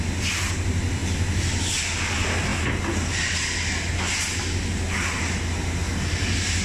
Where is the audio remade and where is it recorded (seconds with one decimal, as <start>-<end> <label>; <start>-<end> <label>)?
0.0-6.6 recorded